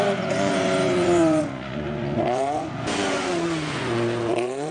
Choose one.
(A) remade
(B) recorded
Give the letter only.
A